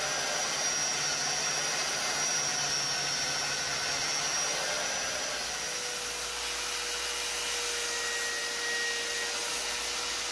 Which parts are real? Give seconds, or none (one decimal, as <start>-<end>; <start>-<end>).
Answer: 0.0-10.3